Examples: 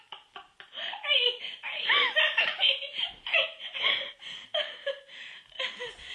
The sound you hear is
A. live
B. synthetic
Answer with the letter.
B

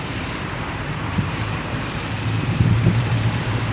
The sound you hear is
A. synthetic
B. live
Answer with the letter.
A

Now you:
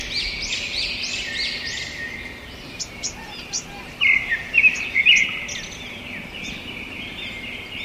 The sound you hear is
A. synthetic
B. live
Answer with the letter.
B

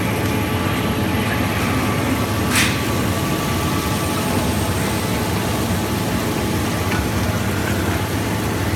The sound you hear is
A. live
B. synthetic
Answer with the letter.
A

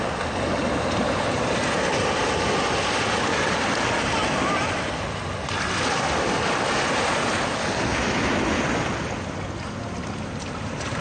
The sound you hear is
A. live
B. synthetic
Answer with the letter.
A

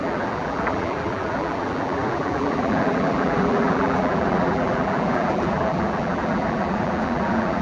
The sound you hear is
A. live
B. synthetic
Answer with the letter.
B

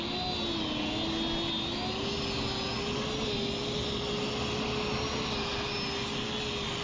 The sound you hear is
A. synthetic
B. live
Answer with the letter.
B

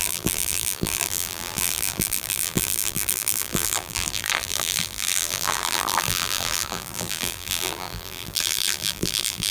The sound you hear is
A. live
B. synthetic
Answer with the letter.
B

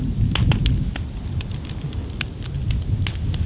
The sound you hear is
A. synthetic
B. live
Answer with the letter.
B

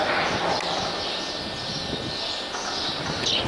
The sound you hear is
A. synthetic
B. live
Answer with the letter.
B